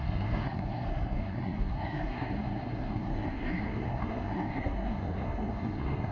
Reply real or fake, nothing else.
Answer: fake